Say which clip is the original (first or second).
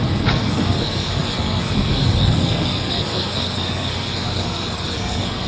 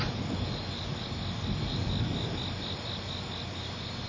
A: second